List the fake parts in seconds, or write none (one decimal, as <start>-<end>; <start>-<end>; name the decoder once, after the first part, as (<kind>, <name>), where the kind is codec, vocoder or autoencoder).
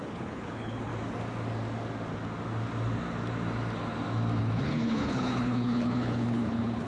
0.0-0.9 (codec, HILCodec); 4.4-6.9